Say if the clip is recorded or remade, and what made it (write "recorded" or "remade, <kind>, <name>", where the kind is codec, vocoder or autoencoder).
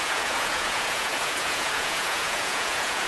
remade, vocoder, Vocos